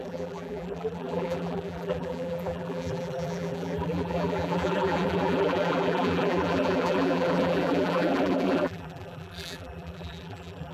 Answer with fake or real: fake